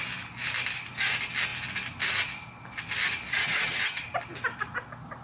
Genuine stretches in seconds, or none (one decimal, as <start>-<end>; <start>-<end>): 0.0-3.4; 4.0-5.2